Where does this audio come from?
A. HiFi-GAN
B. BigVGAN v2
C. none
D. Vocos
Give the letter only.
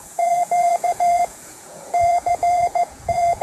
D